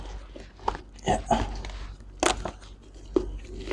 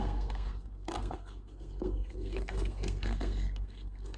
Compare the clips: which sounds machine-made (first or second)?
second